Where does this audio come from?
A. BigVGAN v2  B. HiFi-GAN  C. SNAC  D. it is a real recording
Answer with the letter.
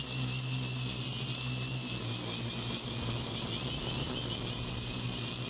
D